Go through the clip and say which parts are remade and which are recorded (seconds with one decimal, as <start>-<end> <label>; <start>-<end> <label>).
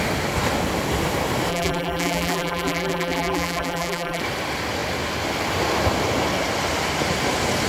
0.0-1.5 recorded; 1.5-4.2 remade; 4.2-7.7 recorded